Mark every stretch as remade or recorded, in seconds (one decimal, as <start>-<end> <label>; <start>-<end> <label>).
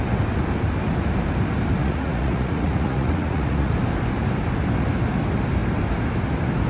0.0-1.8 recorded; 1.8-3.7 remade; 3.7-6.7 recorded